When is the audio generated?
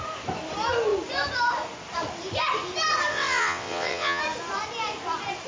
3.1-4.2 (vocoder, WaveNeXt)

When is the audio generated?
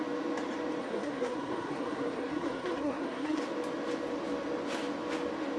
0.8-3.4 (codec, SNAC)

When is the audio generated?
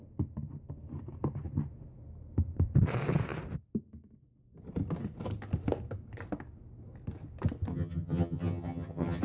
7.7-9.2 (vocoder, HiFi-GAN)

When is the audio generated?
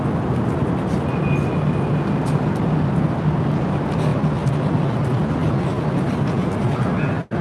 none